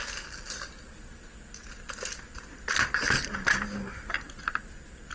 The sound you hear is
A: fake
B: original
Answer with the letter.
B